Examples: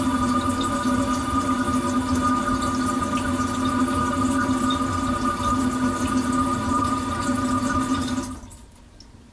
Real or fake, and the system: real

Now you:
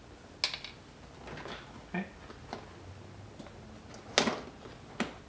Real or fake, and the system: real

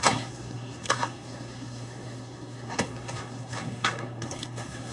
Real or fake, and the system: fake, codec, SNAC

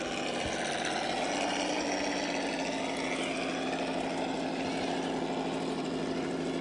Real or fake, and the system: real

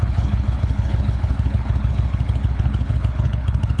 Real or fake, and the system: fake, codec, HILCodec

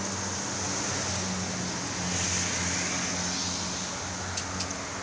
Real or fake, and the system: real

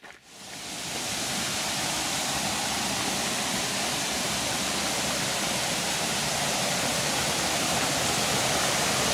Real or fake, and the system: real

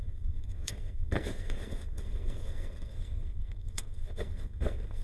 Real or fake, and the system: fake, codec, SNAC